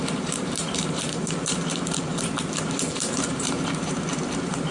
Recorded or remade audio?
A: remade